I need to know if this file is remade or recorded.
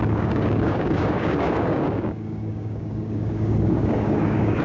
remade